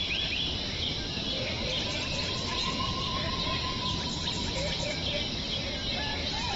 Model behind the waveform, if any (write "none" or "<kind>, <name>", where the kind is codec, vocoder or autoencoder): vocoder, BigVGAN v2